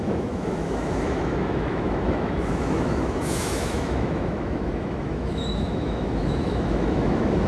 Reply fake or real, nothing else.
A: fake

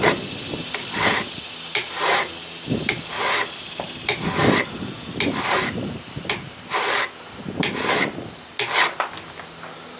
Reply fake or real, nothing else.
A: real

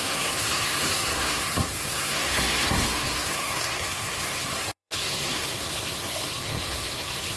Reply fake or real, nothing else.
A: fake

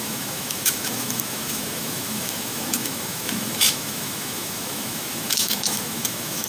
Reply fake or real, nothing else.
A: fake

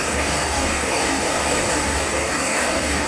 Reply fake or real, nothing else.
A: fake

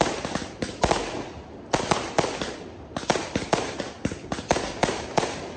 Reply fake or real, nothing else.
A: real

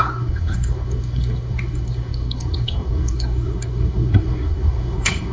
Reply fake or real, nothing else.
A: fake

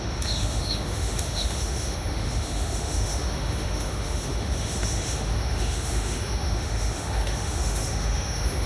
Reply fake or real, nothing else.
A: fake